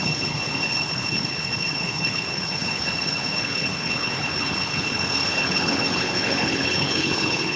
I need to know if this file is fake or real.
fake